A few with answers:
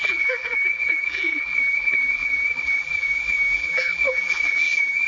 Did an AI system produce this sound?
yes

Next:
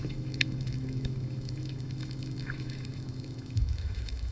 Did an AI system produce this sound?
yes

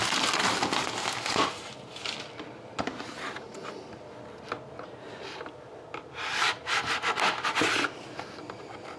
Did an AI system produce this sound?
no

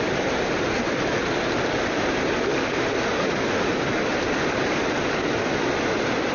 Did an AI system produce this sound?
no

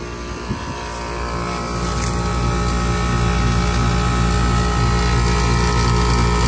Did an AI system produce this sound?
no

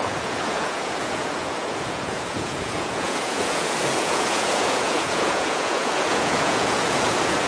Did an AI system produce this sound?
yes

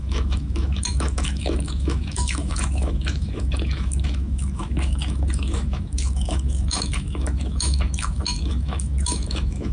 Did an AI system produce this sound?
yes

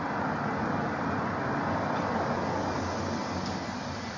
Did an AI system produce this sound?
no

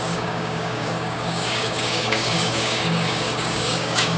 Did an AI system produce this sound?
yes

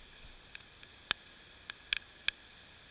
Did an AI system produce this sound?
no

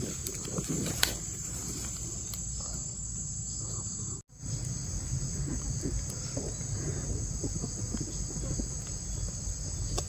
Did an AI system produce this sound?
no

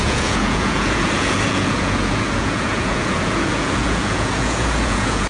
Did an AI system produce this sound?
yes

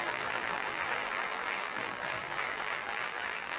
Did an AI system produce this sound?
yes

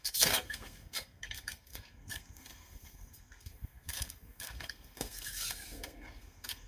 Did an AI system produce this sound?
yes